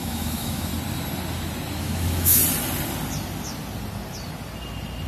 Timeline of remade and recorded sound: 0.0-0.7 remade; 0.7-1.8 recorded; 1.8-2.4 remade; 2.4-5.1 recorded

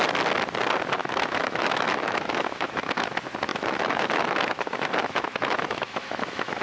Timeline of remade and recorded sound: 0.0-1.0 recorded; 1.0-3.1 remade; 3.1-3.5 recorded; 3.5-6.6 remade

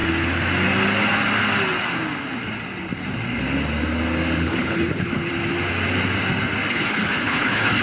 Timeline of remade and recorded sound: 0.0-4.4 recorded; 4.4-5.3 remade; 5.3-6.7 recorded; 6.7-7.8 remade